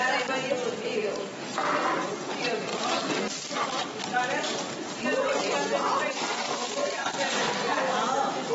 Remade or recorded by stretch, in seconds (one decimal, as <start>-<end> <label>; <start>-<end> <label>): 0.0-8.5 recorded